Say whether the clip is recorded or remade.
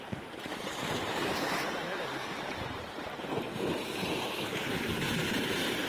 remade